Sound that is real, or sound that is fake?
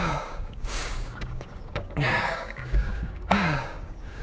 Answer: fake